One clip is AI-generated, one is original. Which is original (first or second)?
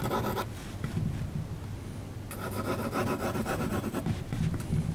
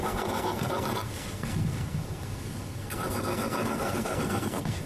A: first